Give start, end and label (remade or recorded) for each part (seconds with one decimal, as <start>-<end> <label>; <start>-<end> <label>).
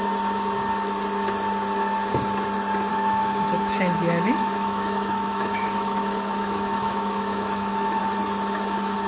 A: 0.0-2.9 recorded; 2.9-8.0 remade; 8.0-9.1 recorded